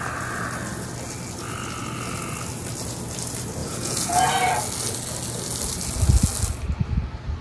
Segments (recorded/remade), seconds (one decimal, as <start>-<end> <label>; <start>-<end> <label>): 0.0-3.6 recorded; 3.6-4.3 remade; 4.3-7.4 recorded